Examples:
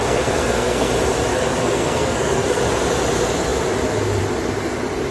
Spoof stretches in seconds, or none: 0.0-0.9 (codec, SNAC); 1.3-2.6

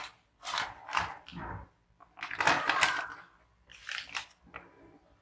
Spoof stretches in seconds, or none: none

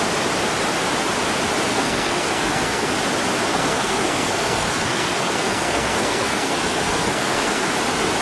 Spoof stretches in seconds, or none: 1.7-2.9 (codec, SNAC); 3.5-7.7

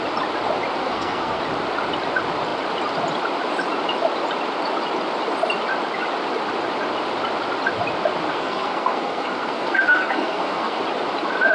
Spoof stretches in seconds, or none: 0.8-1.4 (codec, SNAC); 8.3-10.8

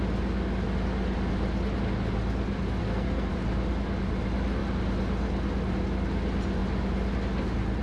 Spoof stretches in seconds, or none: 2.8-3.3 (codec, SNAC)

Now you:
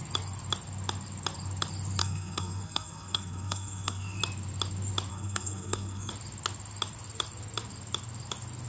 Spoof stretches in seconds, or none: 2.0-4.2 (codec, SNAC); 5.1-6.1

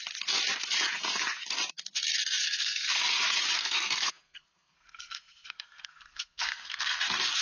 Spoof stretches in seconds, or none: 2.4-3.0 (codec, SNAC); 3.6-7.0